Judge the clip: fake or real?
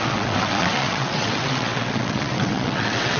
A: fake